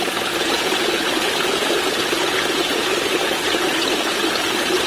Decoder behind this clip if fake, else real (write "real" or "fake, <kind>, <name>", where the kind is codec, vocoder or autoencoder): fake, vocoder, Vocos